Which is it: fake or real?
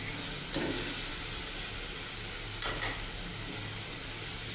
real